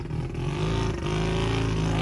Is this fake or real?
real